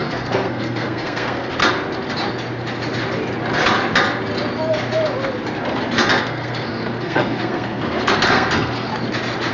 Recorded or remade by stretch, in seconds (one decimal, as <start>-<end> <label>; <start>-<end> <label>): 0.0-1.6 remade; 1.6-6.2 recorded; 6.2-8.9 remade; 8.9-9.5 recorded